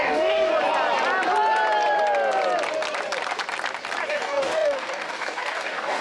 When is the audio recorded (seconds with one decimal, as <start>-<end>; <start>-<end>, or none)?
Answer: 0.5-4.1